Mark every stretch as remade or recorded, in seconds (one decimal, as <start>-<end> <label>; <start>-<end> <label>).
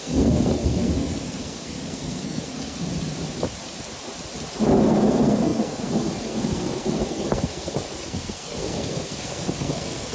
0.0-2.8 remade; 2.8-4.8 recorded; 4.8-10.1 remade